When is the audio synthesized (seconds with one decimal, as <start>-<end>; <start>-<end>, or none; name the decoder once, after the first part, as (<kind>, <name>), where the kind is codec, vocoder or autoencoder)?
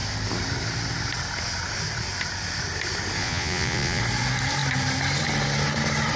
3.2-4.0 (vocoder, Vocos)